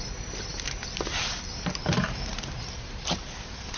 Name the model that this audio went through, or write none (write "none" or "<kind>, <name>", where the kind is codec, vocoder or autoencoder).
vocoder, BigVGAN v2